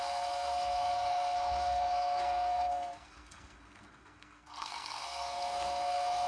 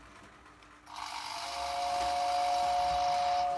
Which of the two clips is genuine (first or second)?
second